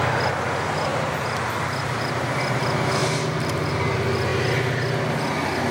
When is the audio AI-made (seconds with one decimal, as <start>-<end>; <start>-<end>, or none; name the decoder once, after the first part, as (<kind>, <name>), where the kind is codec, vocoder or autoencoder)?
0.9-2.6 (vocoder, BigVGAN v2)